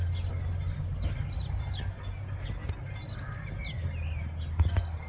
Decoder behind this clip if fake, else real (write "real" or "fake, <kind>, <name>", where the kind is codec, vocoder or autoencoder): real